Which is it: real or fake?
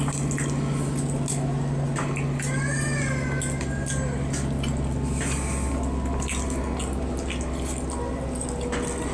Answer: real